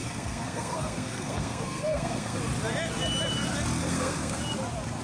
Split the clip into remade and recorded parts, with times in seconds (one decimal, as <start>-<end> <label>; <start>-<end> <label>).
0.0-2.4 remade; 2.4-3.8 recorded; 3.8-4.4 remade; 4.4-5.0 recorded